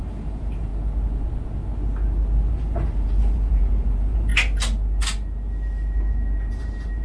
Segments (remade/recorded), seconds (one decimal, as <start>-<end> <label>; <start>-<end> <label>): 0.0-0.7 remade; 0.7-2.5 recorded; 2.5-4.3 remade; 4.3-6.5 recorded; 6.5-7.0 remade